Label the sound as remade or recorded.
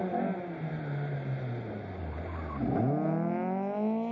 recorded